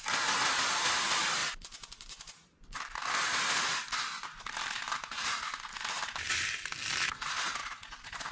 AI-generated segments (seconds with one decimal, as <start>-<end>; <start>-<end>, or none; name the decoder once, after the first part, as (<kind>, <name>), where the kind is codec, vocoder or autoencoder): 7.6-8.3 (vocoder, Vocos)